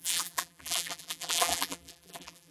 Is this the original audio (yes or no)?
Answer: no